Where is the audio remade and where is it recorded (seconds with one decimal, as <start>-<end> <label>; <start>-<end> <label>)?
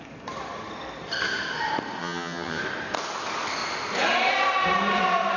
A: 0.0-2.0 recorded; 2.0-2.6 remade; 2.6-5.4 recorded